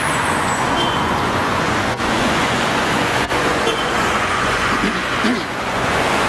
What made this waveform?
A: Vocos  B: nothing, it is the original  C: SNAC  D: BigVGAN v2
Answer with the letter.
A